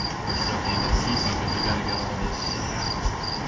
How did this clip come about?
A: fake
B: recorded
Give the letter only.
B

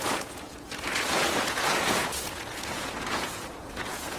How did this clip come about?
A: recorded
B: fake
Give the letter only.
B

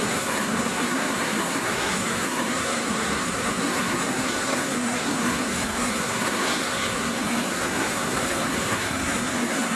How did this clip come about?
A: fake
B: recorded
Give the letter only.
A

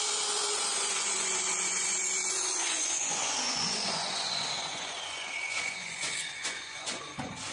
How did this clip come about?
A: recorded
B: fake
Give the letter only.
B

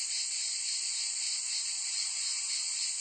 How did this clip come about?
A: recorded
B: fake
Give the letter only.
A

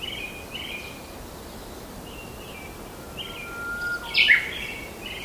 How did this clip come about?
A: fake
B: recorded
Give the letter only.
B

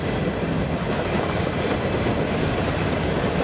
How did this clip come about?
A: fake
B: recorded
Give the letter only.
B